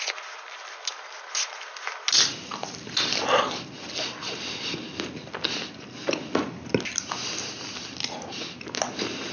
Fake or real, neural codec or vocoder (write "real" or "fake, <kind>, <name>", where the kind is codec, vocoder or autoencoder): real